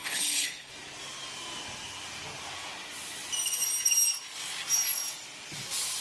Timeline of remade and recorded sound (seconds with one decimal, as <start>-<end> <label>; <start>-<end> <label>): 0.0-0.7 remade; 0.7-6.0 recorded

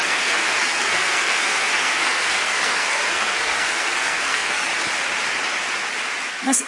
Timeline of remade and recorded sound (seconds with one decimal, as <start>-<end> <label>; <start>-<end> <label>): 0.0-4.7 remade; 4.7-6.3 recorded; 6.3-6.7 remade